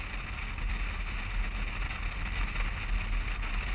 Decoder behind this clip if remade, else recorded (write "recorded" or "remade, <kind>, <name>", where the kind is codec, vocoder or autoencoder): recorded